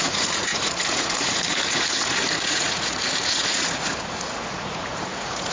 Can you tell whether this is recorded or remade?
remade